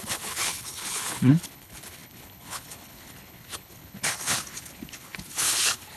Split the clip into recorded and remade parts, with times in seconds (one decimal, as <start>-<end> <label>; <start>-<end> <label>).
0.0-6.0 remade